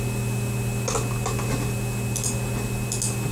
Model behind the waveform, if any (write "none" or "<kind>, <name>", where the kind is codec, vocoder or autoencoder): none